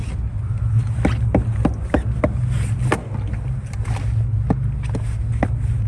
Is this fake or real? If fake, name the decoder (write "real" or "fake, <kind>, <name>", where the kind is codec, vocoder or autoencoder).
real